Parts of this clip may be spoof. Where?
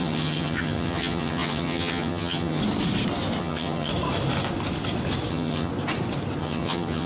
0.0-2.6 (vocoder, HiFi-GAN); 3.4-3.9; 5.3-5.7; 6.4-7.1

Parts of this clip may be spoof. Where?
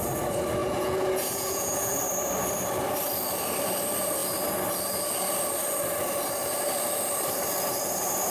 0.6-2.0 (vocoder, Vocos)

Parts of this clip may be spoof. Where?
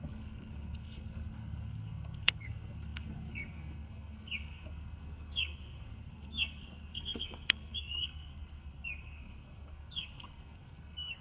0.0-11.2 (codec, SNAC)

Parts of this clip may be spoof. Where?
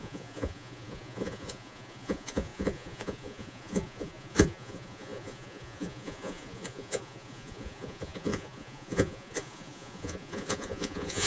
0.0-11.3 (vocoder, Vocos)